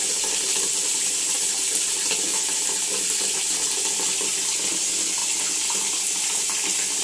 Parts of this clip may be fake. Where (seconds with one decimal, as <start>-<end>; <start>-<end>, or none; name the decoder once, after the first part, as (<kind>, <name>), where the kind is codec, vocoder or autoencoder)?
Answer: none